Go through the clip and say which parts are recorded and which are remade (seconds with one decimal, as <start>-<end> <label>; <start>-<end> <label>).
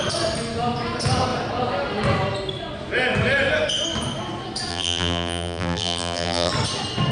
0.0-4.7 recorded; 4.7-6.5 remade; 6.5-7.1 recorded